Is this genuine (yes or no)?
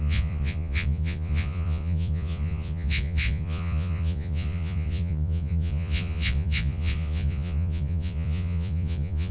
no